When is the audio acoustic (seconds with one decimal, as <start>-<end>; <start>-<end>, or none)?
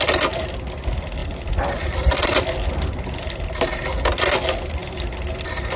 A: 0.0-5.8